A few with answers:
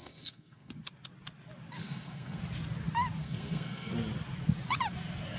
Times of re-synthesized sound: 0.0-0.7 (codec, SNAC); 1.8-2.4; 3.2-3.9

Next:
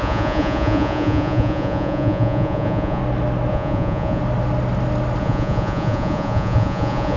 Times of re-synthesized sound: 0.0-3.0 (vocoder, Vocos); 3.5-4.2; 5.2-7.2

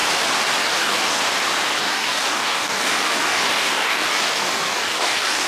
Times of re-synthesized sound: 0.6-1.2 (codec, DAC); 1.8-5.5

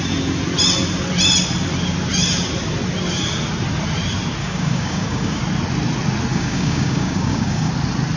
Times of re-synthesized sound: 4.4-5.4 (codec, DAC); 6.3-7.7

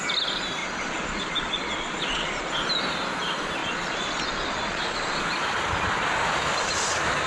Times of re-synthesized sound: 0.6-2.5 (vocoder, Vocos); 3.6-5.2